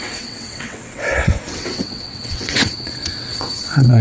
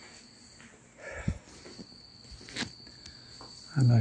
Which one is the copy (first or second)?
first